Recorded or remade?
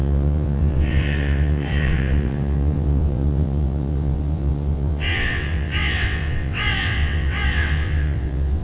remade